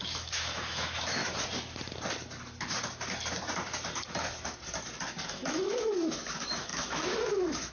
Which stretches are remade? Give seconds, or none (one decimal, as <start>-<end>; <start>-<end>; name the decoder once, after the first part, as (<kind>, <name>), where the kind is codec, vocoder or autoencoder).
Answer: 0.0-1.2 (autoencoder, DAC-VAE); 5.3-7.7